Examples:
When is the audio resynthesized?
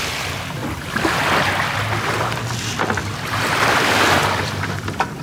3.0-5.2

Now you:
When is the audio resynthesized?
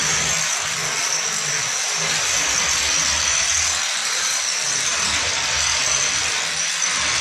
4.9-6.2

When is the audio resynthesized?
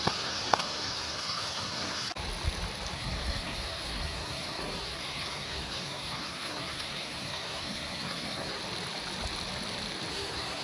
0.0-2.1; 2.9-8.6; 10.1-10.6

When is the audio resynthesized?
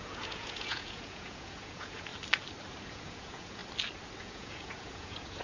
0.0-2.1; 2.8-3.6; 4.2-5.4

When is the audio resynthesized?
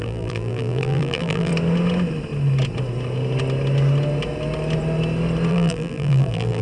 0.0-1.5; 5.5-6.6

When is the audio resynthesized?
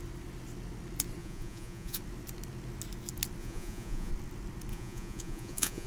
1.2-2.0; 3.4-4.1; 4.7-5.9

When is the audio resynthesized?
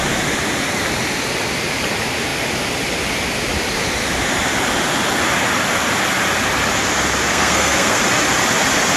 7.3-8.0